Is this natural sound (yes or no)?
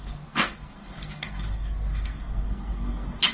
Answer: no